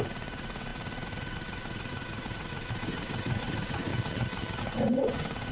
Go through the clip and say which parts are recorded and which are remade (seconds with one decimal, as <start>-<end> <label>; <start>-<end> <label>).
0.0-3.9 remade; 3.9-4.6 recorded; 4.6-5.5 remade